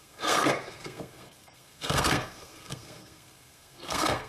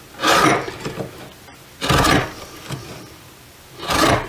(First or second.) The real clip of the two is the second